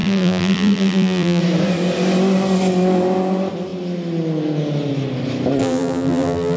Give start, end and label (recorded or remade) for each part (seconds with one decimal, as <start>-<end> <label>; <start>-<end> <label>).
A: 0.0-1.4 remade; 1.4-5.6 recorded; 5.6-6.6 remade